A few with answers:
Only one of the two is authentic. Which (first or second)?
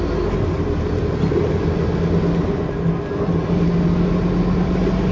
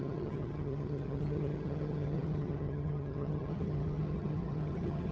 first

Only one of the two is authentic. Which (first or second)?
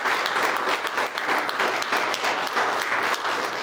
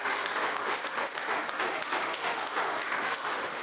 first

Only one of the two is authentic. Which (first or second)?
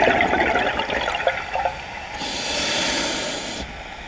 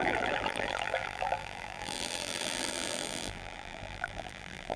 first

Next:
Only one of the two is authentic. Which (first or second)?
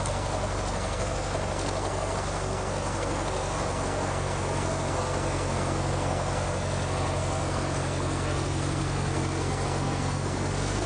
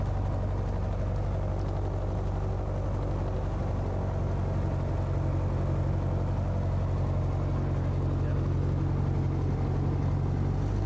second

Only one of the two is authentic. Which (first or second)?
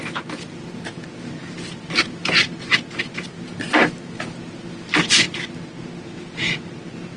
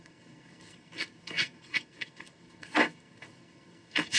first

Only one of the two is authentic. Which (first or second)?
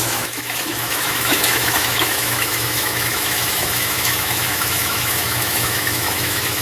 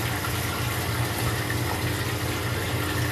second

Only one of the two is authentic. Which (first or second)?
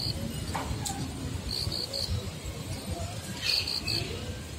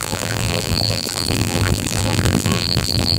first